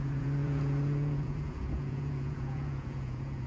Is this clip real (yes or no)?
no